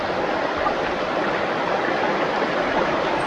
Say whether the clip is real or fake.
real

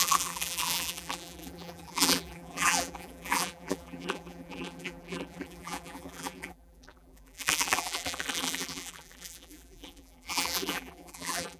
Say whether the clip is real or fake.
fake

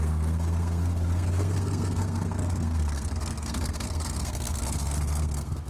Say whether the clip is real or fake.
fake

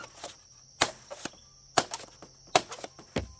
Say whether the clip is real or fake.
real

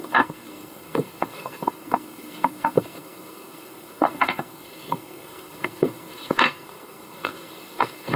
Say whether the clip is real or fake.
fake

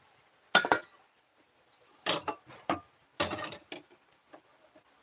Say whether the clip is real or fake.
real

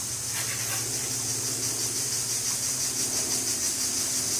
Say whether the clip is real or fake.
real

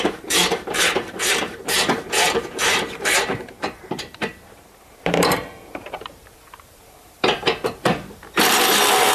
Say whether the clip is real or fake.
fake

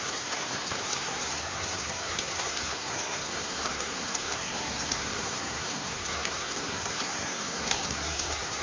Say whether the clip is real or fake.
fake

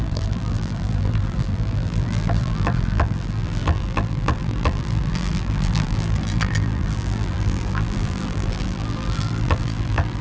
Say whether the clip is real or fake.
fake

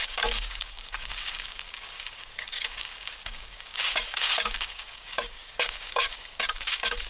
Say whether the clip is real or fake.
fake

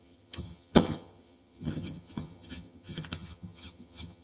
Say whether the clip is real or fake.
fake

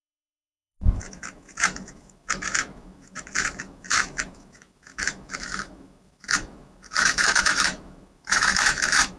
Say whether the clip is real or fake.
fake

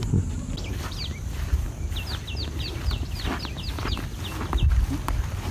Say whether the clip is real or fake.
real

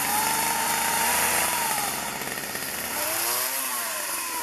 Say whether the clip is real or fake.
fake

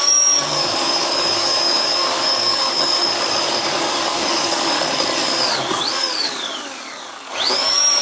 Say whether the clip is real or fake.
fake